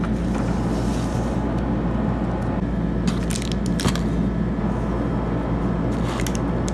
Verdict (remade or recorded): recorded